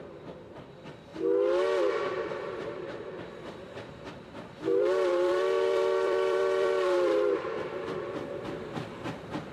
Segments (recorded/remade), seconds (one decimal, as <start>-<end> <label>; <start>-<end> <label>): 0.0-1.1 remade; 1.1-2.2 recorded; 2.2-9.5 remade